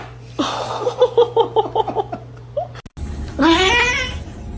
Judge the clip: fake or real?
real